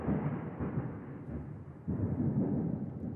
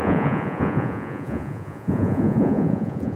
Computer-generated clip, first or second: second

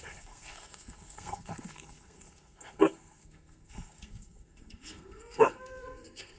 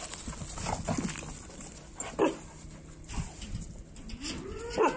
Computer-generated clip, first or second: first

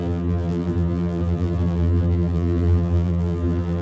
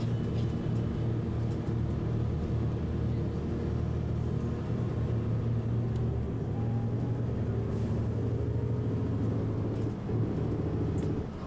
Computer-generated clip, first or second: first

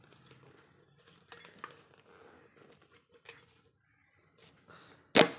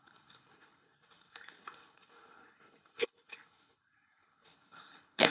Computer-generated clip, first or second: second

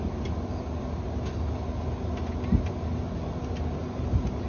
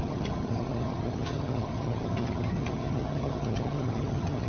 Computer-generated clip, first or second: second